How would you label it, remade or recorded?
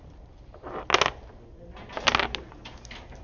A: recorded